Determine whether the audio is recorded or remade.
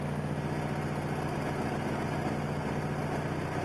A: recorded